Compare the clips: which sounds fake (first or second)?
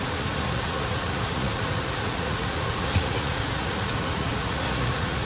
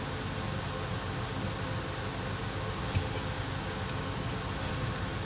first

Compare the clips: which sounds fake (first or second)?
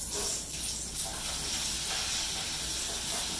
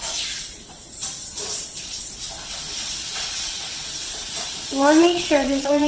second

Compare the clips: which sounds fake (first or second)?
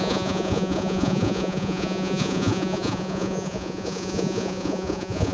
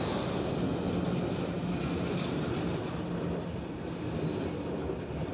first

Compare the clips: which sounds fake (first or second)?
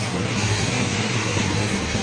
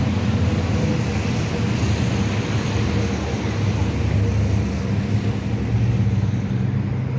first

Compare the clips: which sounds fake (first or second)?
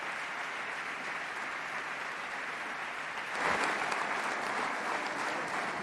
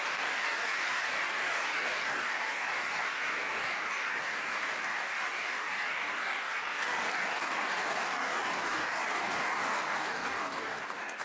second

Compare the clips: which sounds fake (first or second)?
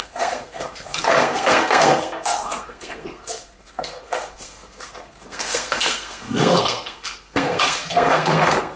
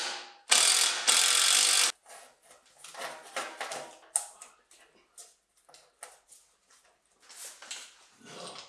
first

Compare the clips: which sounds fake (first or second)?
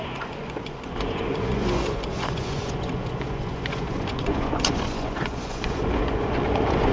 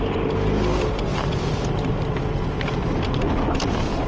first